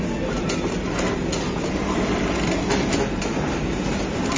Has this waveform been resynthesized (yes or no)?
no